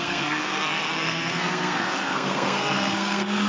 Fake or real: fake